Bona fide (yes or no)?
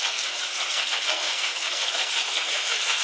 no